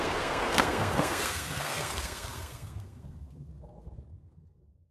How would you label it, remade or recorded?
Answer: remade